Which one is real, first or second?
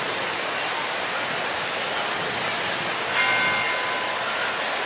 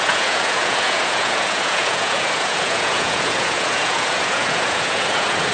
first